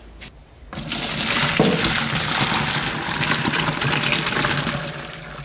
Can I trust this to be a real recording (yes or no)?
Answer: yes